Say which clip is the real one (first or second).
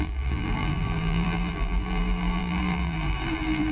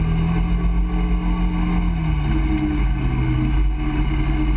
second